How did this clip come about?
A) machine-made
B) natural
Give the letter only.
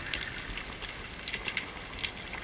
B